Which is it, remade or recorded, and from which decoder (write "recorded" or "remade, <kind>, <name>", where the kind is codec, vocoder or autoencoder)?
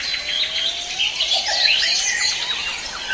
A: recorded